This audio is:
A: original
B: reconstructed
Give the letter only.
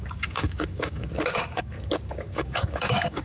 B